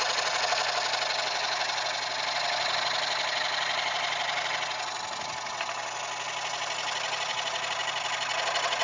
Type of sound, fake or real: real